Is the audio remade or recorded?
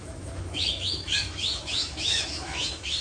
remade